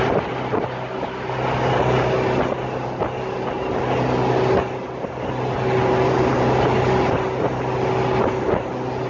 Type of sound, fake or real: real